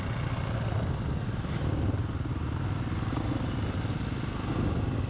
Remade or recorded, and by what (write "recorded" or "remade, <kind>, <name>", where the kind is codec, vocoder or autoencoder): recorded